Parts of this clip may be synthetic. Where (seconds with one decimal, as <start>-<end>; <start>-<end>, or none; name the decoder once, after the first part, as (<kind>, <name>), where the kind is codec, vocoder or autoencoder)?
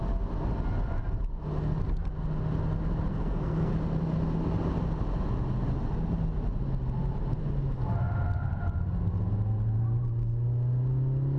3.1-3.7 (codec, SNAC)